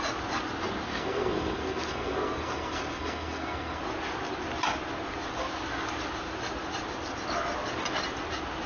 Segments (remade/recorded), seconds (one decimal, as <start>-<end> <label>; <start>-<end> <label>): 0.0-0.9 recorded; 0.9-3.8 remade; 3.8-8.7 recorded